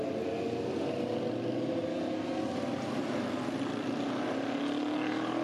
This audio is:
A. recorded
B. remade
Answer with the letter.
A